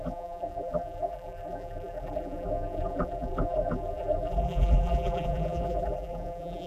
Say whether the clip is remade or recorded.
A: remade